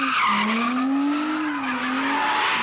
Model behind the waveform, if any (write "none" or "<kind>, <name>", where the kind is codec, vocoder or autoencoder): none